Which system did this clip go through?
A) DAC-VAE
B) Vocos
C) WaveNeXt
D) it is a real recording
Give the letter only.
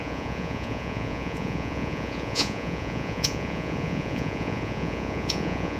B